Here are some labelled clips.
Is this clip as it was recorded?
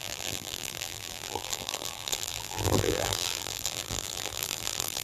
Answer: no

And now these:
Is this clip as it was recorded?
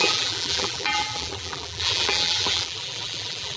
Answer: no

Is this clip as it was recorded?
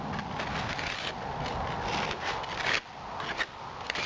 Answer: yes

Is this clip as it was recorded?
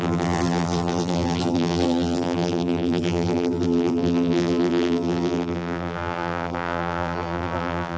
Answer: no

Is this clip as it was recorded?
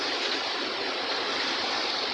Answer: no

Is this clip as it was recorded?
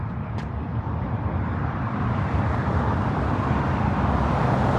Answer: no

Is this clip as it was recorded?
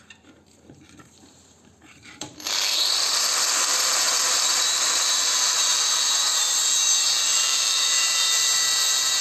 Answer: no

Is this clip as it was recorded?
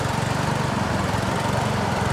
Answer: no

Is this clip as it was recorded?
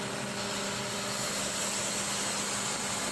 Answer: yes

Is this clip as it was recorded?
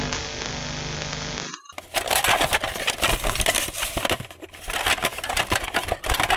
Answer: yes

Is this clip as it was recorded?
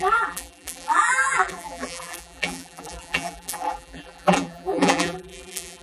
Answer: no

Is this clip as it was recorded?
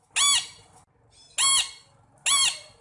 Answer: yes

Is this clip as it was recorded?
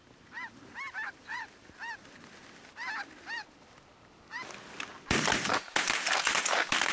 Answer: yes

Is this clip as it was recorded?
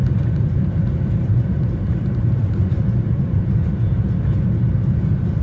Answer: no